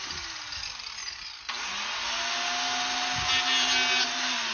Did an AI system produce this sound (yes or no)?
no